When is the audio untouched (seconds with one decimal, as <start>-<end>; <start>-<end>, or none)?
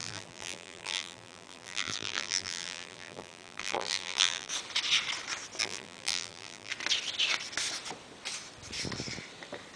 4.5-5.6; 6.7-9.8